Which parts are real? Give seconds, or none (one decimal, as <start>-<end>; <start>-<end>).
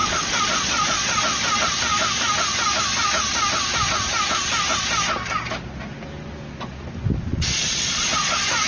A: 1.2-7.2